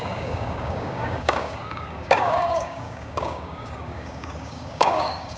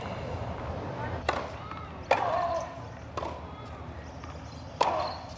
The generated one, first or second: first